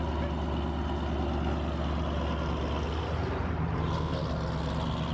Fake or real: real